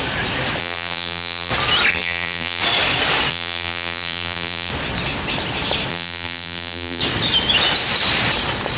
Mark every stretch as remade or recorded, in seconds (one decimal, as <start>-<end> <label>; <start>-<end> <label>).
0.0-0.6 recorded; 0.6-1.5 remade; 1.5-1.9 recorded; 1.9-2.6 remade; 2.6-3.3 recorded; 3.3-4.7 remade; 4.7-5.9 recorded; 5.9-7.0 remade; 7.0-8.8 recorded